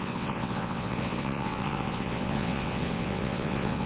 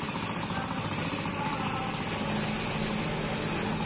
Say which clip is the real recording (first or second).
second